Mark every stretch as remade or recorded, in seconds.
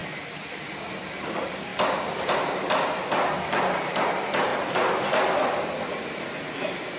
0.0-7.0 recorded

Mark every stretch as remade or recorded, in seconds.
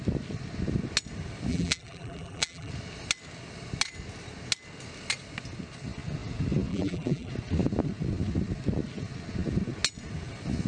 0.0-1.5 recorded; 1.5-2.7 remade; 2.7-6.7 recorded; 6.7-7.3 remade; 7.3-10.7 recorded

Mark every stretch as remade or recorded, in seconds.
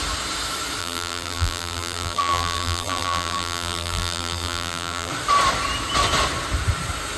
0.0-0.8 recorded; 0.8-5.1 remade; 5.1-7.2 recorded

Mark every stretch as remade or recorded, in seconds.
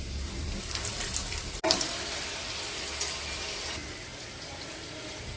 0.0-0.4 recorded; 0.4-2.5 remade; 2.5-4.1 recorded; 4.1-5.4 remade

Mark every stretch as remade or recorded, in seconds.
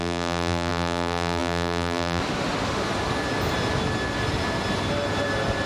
0.0-2.2 remade; 2.2-5.7 recorded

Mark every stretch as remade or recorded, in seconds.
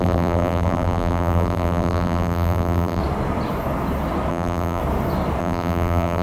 0.0-3.0 remade; 3.0-4.3 recorded; 4.3-4.8 remade; 4.8-5.4 recorded; 5.4-6.2 remade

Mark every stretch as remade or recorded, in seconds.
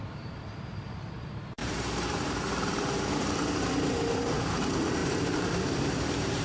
0.0-6.4 remade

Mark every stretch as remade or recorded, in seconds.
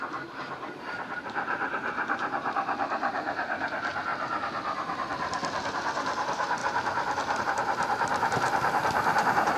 0.0-4.1 remade; 4.1-5.7 recorded; 5.7-6.6 remade; 6.6-7.4 recorded; 7.4-9.6 remade